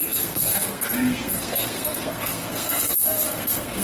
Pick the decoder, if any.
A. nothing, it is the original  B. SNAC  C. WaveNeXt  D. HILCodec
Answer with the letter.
B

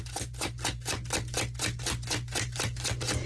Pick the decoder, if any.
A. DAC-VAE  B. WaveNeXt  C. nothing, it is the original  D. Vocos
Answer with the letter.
C